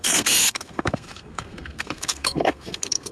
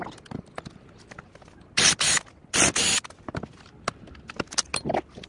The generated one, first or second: first